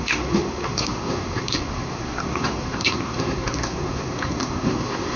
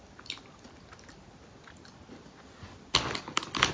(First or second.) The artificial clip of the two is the first